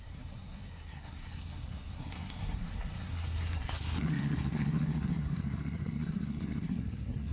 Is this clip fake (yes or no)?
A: yes